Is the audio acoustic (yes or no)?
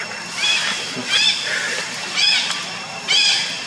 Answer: yes